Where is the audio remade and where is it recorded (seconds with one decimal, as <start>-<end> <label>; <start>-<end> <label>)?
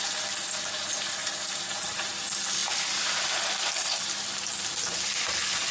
0.0-1.2 recorded; 1.2-2.1 remade; 2.1-5.7 recorded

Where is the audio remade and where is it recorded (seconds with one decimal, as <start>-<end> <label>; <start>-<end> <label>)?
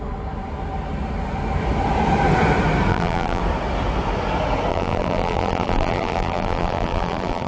0.0-2.9 recorded; 2.9-3.4 remade; 3.4-4.7 recorded; 4.7-7.5 remade